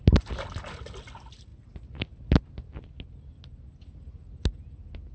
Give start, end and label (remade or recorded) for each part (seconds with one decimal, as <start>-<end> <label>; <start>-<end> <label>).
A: 0.0-5.1 recorded